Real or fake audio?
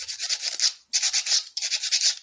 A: real